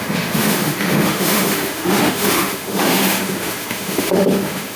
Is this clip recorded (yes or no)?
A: no